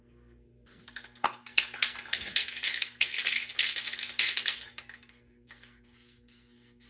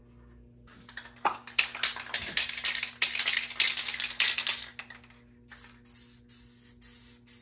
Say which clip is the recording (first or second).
second